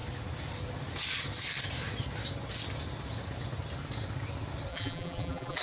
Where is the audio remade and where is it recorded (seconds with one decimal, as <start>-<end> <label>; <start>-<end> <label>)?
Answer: 0.0-4.7 recorded; 4.7-5.6 remade

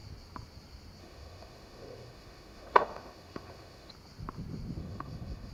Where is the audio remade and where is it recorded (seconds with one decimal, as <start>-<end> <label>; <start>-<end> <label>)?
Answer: 0.0-1.0 recorded; 1.0-3.9 remade; 3.9-4.8 recorded; 4.8-5.5 remade

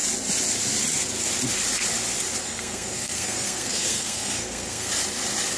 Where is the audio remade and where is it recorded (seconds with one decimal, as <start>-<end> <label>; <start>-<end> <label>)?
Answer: 0.0-2.4 recorded; 2.4-4.9 remade; 4.9-5.6 recorded

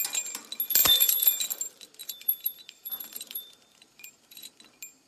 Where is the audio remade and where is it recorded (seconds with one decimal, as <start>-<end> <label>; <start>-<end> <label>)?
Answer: 0.0-0.8 recorded; 0.8-1.4 remade; 1.4-2.0 recorded; 2.0-4.5 remade; 4.5-5.1 recorded

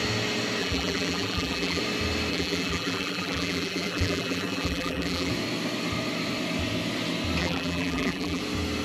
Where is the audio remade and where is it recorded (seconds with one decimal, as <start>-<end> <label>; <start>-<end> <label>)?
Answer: 0.0-0.6 recorded; 0.6-1.8 remade; 1.8-2.3 recorded; 2.3-5.3 remade; 5.3-7.4 recorded; 7.4-8.4 remade; 8.4-8.8 recorded